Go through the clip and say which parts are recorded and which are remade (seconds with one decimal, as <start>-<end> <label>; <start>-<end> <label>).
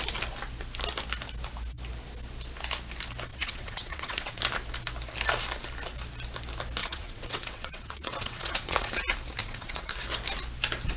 0.0-3.3 recorded; 3.3-4.4 remade; 4.4-6.8 recorded; 6.8-8.9 remade; 8.9-9.4 recorded; 9.4-9.9 remade; 9.9-11.0 recorded